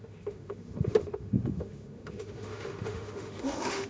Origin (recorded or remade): remade